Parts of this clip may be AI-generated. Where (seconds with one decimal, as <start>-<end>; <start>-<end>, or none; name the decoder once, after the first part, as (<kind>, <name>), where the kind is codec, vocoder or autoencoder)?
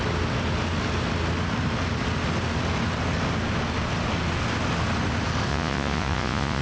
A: 5.5-6.6 (vocoder, Vocos)